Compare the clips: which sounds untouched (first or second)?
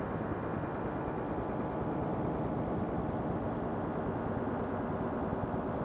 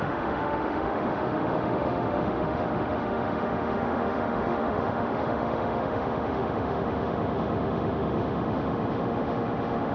first